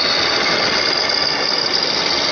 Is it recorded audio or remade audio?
recorded